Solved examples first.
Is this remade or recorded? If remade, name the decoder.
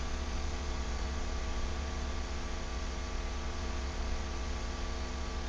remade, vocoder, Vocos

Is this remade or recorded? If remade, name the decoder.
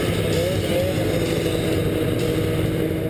recorded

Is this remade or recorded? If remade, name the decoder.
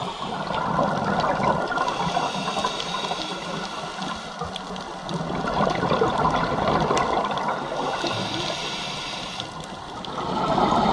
recorded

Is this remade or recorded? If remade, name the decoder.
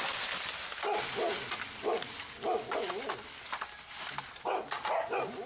recorded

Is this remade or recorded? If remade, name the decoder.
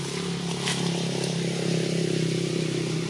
recorded